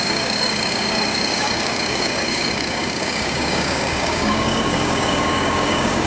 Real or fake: fake